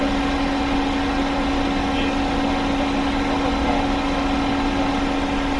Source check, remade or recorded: recorded